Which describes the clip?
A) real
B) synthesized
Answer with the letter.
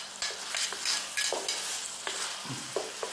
A